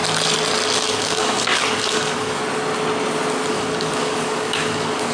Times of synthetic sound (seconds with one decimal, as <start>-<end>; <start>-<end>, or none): 0.8-2.4; 3.5-5.1